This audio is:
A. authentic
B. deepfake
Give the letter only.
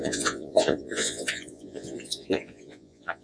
B